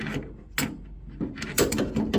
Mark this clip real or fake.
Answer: real